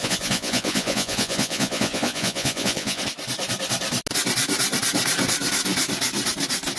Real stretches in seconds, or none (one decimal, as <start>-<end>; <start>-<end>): 3.0-6.8